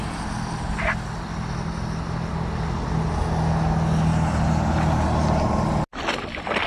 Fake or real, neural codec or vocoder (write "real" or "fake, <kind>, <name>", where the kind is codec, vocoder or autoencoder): real